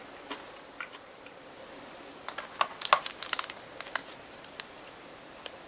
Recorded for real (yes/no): yes